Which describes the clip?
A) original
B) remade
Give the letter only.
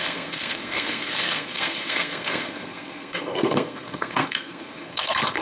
B